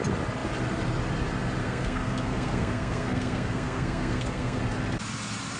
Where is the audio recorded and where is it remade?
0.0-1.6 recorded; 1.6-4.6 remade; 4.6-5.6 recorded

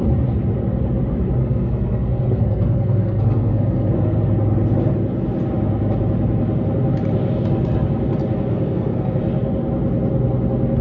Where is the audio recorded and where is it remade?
0.0-1.4 recorded; 1.4-4.2 remade; 4.2-8.5 recorded; 8.5-9.2 remade; 9.2-10.8 recorded

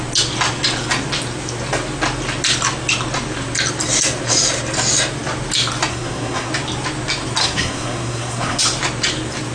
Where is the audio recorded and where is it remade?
0.0-5.9 recorded; 5.9-6.5 remade; 6.5-7.4 recorded; 7.4-8.6 remade; 8.6-9.5 recorded

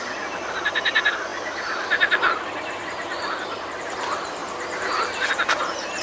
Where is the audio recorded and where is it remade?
0.0-6.0 recorded

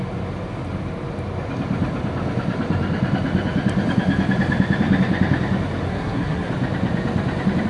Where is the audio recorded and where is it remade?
0.0-5.9 recorded; 5.9-6.5 remade; 6.5-7.7 recorded

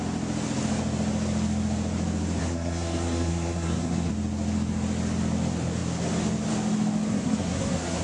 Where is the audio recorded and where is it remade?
0.0-2.4 recorded; 2.4-4.1 remade; 4.1-7.1 recorded; 7.1-8.0 remade